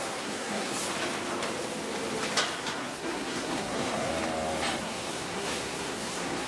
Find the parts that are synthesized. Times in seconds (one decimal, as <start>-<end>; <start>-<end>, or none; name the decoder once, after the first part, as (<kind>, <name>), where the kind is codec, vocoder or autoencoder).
0.0-0.8 (codec, SNAC); 2.6-4.1; 4.8-6.5